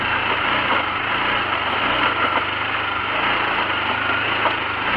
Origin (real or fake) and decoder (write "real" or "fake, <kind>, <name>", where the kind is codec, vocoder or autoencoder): real